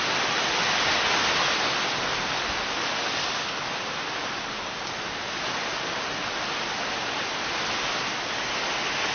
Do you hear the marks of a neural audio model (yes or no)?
no